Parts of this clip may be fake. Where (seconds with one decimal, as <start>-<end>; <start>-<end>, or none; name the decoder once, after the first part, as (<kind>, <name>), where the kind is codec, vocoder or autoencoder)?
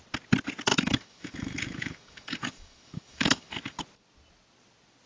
0.7-3.8 (autoencoder, DAC-VAE)